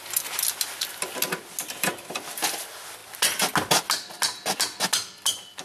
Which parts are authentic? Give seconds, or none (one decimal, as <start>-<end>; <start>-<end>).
0.0-5.6